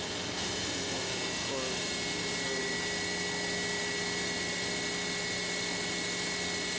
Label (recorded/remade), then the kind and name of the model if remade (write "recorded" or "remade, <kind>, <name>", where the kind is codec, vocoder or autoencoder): recorded